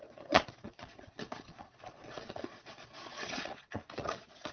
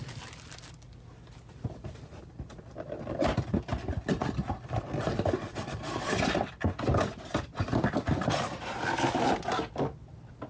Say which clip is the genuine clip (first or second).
second